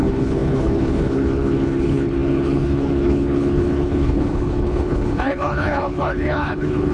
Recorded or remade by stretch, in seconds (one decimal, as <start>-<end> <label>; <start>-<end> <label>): 0.0-6.9 remade